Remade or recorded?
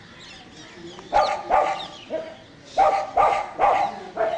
recorded